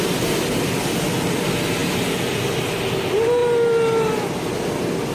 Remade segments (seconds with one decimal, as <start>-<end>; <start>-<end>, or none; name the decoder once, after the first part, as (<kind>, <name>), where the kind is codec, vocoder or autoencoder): none